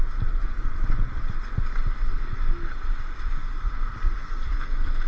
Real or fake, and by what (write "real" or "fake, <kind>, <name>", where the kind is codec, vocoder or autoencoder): real